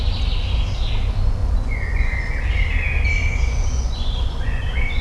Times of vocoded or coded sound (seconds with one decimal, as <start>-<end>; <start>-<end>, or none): 1.4-2.3; 3.2-5.0